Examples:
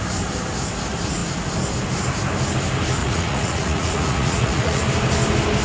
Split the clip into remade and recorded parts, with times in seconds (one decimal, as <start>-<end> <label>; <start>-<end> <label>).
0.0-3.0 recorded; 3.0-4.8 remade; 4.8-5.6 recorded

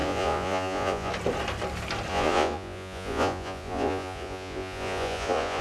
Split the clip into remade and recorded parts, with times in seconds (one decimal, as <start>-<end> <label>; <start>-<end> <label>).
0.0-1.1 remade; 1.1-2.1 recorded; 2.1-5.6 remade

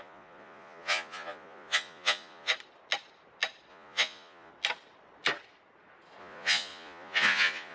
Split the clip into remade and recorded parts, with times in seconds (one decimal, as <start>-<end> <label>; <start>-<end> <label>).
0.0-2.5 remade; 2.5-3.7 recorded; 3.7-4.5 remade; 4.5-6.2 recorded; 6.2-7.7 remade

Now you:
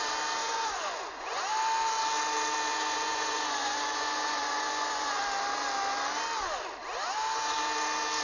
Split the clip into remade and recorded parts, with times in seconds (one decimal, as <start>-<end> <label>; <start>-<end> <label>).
0.0-0.4 recorded; 0.4-1.4 remade; 1.4-2.7 recorded; 2.7-5.2 remade; 5.2-8.2 recorded

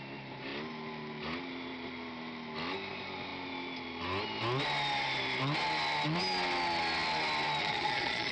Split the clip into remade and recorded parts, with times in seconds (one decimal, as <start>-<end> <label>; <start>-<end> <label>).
0.0-7.6 recorded; 7.6-8.3 remade

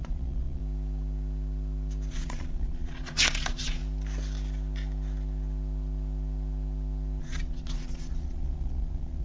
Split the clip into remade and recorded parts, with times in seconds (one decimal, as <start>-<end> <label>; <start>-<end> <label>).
0.0-0.6 remade; 0.6-2.1 recorded; 2.1-3.8 remade; 3.8-7.2 recorded; 7.2-9.2 remade

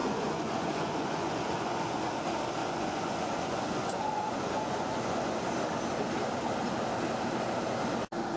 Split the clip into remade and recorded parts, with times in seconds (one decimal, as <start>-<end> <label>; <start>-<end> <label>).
0.0-2.1 remade; 2.1-2.6 recorded; 2.6-5.4 remade; 5.4-8.4 recorded